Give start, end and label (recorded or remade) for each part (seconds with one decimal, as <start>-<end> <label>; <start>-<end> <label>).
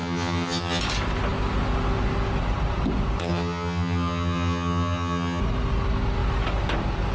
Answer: 0.0-0.8 remade; 0.8-3.2 recorded; 3.2-5.4 remade; 5.4-7.1 recorded